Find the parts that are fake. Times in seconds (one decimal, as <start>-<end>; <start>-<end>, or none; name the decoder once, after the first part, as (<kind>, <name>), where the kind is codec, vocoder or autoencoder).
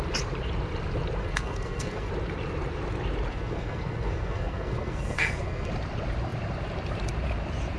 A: 1.2-2.1 (codec, SNAC); 3.3-5.7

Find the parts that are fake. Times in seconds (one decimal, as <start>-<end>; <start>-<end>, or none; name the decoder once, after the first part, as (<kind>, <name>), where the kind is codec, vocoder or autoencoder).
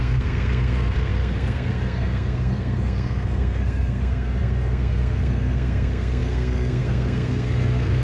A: 0.0-8.0 (codec, SNAC)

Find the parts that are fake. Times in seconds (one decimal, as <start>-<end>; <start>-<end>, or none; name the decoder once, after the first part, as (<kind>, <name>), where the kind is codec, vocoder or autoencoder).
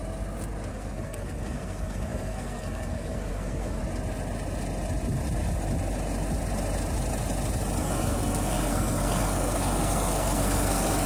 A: 0.7-3.8 (codec, SNAC); 7.8-11.1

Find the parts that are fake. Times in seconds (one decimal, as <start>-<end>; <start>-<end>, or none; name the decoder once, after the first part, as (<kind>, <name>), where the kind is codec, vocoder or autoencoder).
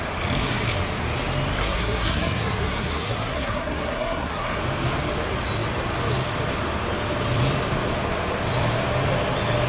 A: 1.6-4.6 (codec, SNAC)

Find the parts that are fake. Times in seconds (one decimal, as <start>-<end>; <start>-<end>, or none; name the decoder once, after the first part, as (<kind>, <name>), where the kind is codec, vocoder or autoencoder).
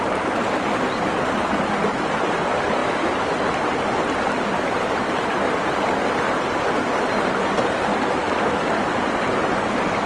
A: none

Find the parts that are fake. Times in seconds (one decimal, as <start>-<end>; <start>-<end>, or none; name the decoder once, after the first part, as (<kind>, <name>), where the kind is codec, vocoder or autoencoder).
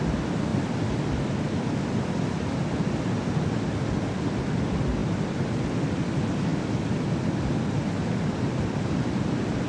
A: none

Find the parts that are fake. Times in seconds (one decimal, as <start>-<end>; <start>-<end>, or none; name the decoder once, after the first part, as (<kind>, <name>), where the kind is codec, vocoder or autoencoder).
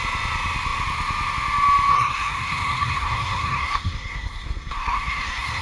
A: 1.9-5.6 (codec, SNAC)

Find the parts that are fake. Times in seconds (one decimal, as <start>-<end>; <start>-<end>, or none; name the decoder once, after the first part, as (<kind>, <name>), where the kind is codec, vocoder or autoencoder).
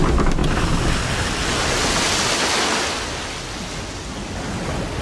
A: none